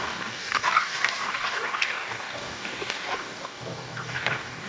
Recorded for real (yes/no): no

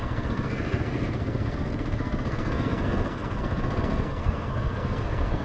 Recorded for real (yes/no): no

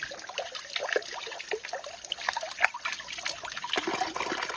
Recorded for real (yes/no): yes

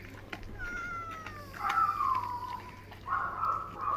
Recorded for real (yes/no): yes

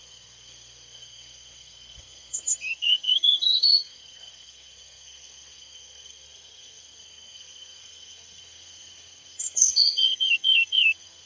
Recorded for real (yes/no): no